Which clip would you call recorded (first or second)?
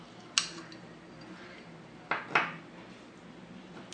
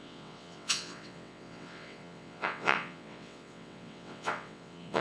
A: first